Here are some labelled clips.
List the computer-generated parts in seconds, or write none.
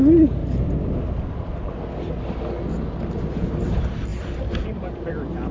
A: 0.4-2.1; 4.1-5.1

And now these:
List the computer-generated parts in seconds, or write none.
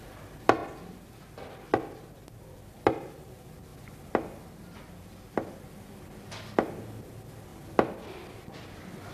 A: 0.0-0.6; 2.2-3.7; 4.5-7.5; 8.3-9.1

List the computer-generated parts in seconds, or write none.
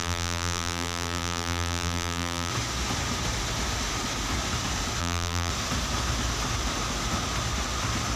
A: 0.0-2.5; 5.0-5.5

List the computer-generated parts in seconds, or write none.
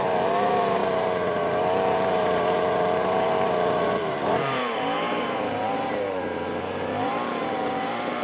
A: 0.0-8.2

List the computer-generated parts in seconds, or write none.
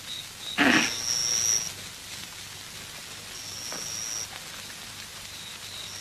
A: 5.1-5.6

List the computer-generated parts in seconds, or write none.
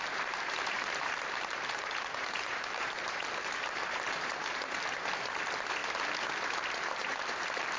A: 0.0-5.8; 7.0-7.8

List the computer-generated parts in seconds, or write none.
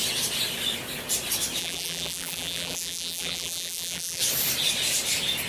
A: 1.6-4.2